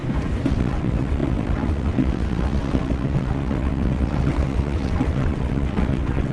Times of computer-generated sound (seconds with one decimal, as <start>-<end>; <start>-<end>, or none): 0.5-6.3